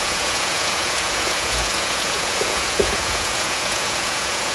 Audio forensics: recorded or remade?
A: remade